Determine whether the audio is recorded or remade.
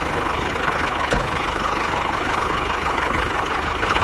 remade